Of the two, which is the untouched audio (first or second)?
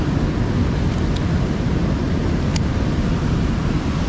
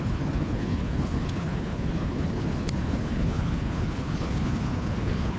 first